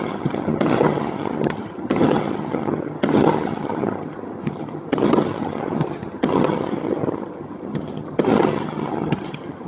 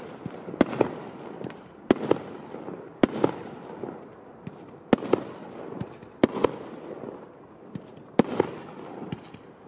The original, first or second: second